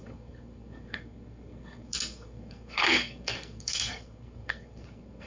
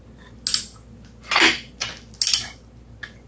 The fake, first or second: first